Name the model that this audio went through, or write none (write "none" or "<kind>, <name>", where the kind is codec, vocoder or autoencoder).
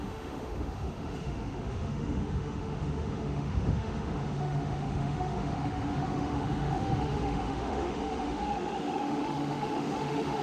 autoencoder, DAC-VAE